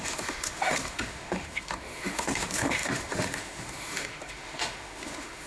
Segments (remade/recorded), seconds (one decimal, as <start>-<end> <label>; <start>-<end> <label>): 0.0-5.5 remade